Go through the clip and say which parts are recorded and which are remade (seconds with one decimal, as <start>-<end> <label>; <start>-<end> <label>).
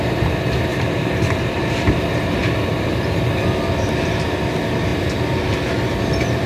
0.0-0.7 recorded; 0.7-1.8 remade; 1.8-6.5 recorded